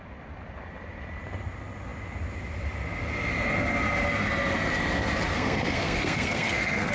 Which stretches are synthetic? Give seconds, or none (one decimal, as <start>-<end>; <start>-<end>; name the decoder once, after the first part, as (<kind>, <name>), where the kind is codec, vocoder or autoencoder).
5.3-6.9 (codec, SNAC)